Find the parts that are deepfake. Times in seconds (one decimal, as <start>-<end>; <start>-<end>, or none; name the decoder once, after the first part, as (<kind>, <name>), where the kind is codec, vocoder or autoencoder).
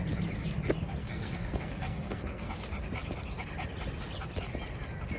1.0-2.5 (codec, SNAC)